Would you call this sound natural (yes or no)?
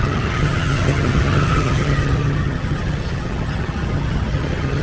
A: no